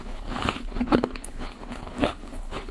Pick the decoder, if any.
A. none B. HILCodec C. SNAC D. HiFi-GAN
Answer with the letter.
B